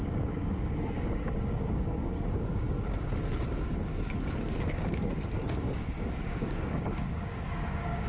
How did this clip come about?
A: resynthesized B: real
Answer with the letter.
A